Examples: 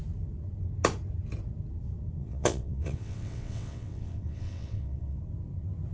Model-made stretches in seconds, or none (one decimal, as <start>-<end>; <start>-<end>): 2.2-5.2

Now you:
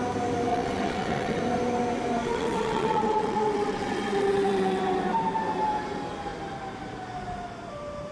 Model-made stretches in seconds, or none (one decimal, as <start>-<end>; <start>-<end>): 0.5-1.4; 2.2-4.8

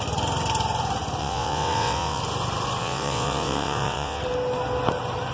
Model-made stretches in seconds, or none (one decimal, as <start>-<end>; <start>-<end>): 1.2-2.2; 2.8-4.2

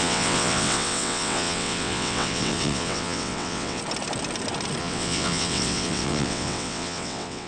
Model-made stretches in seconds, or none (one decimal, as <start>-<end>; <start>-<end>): 0.0-3.8; 4.8-7.5

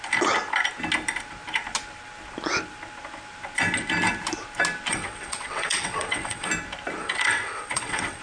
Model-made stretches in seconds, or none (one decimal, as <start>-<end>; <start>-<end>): 4.9-6.5; 7.0-8.2

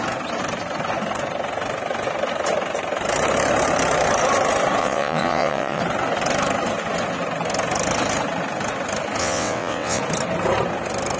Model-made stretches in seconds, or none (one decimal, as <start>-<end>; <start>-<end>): 4.8-5.8; 9.2-10.0

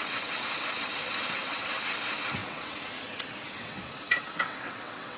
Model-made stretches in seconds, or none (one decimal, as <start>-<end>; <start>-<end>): 0.0-5.2

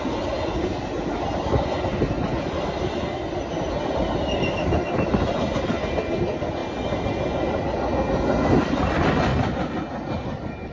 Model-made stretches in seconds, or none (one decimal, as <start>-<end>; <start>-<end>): none